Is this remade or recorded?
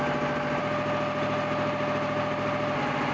recorded